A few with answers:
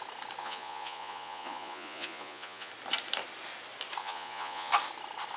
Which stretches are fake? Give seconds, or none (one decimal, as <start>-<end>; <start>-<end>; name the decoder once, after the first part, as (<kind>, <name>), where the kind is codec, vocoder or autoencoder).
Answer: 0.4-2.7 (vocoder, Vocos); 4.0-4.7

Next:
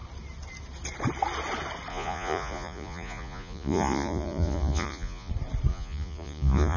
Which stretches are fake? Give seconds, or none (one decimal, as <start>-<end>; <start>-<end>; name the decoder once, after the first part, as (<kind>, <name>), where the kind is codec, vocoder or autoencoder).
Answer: 1.9-5.3 (vocoder, Vocos); 5.7-6.8

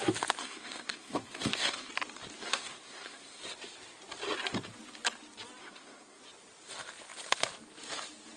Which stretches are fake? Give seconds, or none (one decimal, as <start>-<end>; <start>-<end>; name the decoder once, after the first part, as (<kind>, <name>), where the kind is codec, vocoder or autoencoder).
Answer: 0.4-1.9 (codec, SNAC); 2.4-3.4; 5.6-6.2